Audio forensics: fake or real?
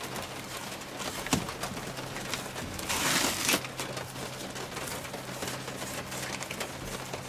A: real